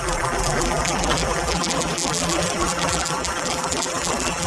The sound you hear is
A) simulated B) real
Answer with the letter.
A